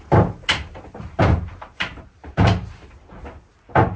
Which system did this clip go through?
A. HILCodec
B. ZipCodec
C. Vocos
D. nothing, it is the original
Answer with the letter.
D